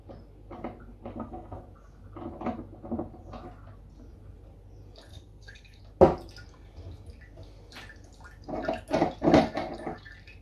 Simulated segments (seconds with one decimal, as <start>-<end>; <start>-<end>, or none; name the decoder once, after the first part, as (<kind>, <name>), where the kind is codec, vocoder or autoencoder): 1.1-1.6 (codec, SNAC); 5.1-5.8